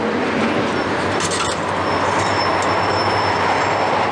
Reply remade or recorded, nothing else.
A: recorded